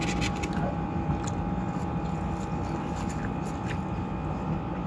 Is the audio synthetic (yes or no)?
no